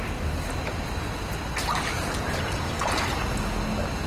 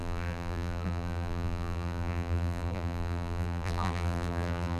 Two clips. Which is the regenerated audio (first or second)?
second